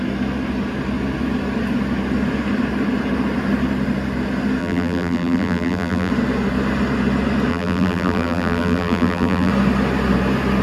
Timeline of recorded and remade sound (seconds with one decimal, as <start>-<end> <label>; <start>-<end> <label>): 0.0-4.6 recorded; 4.6-6.1 remade; 6.1-7.5 recorded; 7.5-9.5 remade; 9.5-10.6 recorded

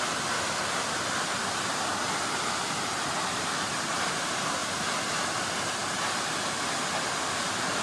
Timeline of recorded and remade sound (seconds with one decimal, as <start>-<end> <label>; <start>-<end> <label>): 0.0-7.8 recorded

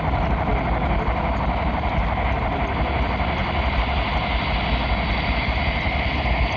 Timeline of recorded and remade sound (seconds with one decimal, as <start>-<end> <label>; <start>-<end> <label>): 0.0-6.6 recorded

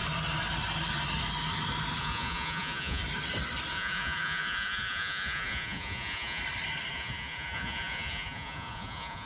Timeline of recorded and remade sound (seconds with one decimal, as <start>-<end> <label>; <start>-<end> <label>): 0.0-2.0 recorded; 2.0-3.0 remade; 3.0-3.7 recorded; 3.7-6.4 remade; 6.4-6.9 recorded; 6.9-9.3 remade

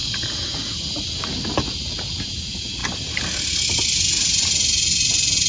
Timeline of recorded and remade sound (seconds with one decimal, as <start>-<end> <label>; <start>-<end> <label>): 0.0-5.5 recorded

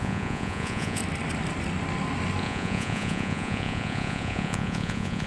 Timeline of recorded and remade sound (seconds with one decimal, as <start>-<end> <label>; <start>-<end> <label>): 0.0-1.0 remade; 1.0-2.4 recorded; 2.4-5.3 remade